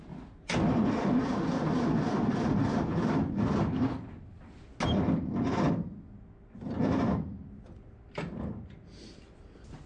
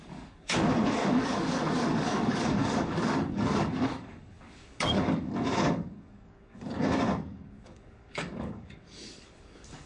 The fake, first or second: second